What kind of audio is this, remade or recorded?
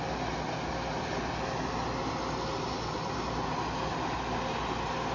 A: recorded